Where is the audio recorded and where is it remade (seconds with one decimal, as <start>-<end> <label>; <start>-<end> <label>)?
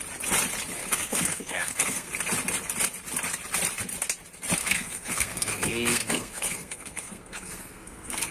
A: 0.0-0.8 recorded; 0.8-2.1 remade; 2.1-4.6 recorded; 4.6-8.3 remade